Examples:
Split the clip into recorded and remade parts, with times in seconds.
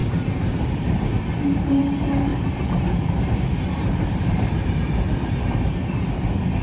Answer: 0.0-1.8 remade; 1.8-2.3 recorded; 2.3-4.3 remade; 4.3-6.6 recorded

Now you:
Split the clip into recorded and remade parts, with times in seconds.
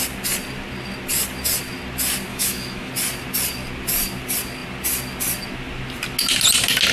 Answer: 0.0-2.3 recorded; 2.3-2.9 remade; 2.9-6.9 recorded